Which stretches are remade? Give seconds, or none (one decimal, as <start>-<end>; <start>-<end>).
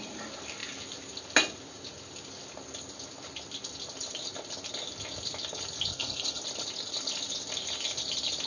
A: 5.9-6.4